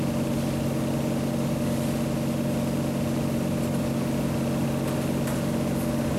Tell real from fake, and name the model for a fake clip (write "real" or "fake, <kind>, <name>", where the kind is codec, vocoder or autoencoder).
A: real